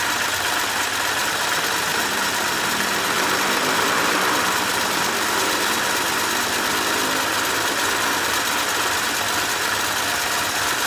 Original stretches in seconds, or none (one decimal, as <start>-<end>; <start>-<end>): 0.0-1.2; 5.6-10.9